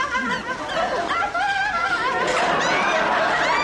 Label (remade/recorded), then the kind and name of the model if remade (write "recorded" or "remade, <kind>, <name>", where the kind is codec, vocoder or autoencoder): recorded